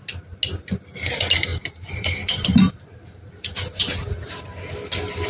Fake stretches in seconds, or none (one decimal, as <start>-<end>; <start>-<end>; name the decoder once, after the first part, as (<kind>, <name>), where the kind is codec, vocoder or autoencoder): 1.5-4.7 (vocoder, BigVGAN v2)